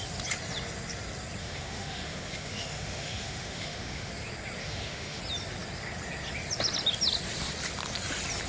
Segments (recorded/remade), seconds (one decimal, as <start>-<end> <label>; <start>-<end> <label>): 0.0-1.4 recorded; 1.4-4.1 remade; 4.1-4.6 recorded; 4.6-5.2 remade; 5.2-8.5 recorded